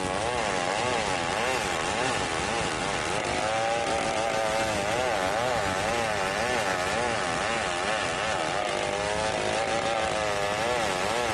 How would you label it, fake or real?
real